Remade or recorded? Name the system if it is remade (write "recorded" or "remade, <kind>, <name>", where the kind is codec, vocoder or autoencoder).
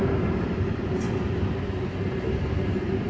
recorded